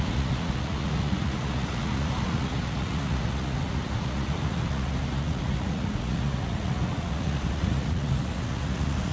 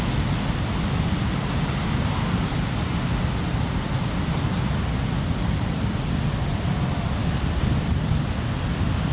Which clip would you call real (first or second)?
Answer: second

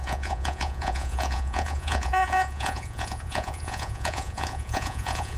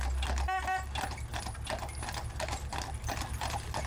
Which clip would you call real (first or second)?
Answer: second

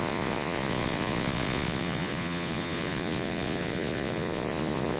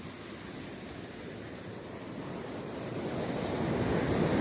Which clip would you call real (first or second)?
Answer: second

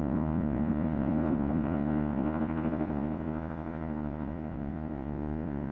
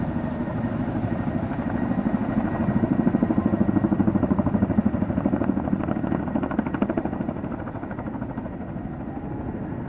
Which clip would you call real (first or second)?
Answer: second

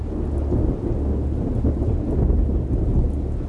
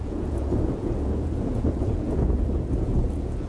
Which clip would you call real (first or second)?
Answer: first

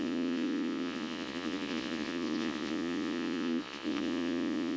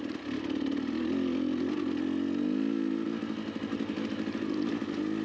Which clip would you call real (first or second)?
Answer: second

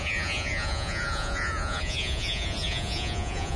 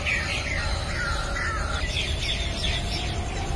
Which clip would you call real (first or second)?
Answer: second